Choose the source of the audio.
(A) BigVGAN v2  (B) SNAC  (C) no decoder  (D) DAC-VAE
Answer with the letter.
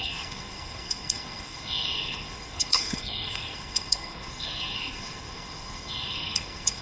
B